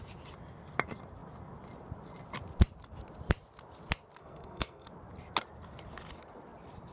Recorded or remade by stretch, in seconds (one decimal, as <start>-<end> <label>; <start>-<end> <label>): 0.0-4.2 recorded; 4.2-4.9 remade; 4.9-6.9 recorded